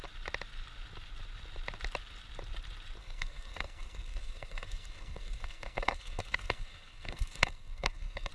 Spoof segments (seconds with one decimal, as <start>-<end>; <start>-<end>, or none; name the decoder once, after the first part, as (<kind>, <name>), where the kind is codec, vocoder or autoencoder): 3.0-8.3 (codec, SNAC)

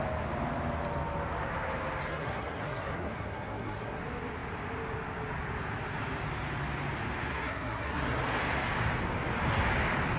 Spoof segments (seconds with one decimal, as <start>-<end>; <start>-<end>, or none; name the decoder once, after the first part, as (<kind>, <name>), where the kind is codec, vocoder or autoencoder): 2.1-4.0 (codec, SNAC); 7.3-8.2

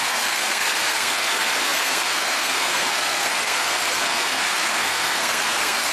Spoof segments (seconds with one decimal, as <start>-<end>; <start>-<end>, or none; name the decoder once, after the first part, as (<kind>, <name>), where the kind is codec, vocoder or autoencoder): 0.0-5.9 (codec, SNAC)

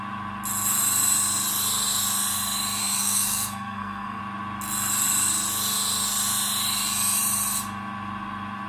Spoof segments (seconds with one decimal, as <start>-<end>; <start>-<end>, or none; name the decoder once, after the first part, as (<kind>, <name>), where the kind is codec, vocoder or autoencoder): 2.8-4.2 (codec, SNAC)

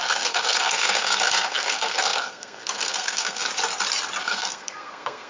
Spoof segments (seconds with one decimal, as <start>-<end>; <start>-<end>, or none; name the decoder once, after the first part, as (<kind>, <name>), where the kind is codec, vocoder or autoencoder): 0.0-3.5 (codec, SNAC); 4.2-5.3

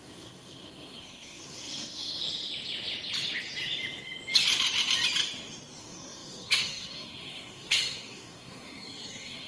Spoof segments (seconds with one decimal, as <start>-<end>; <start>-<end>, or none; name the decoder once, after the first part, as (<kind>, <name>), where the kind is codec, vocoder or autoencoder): 0.0-2.2 (codec, SNAC); 5.8-9.5

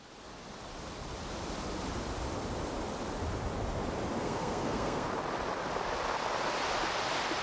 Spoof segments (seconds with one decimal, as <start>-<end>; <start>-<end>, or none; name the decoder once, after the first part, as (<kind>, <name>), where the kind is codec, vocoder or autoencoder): 4.2-5.1 (codec, SNAC)